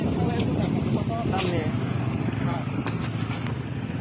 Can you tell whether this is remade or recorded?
recorded